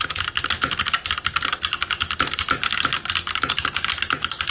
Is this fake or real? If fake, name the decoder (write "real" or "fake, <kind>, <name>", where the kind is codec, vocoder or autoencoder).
real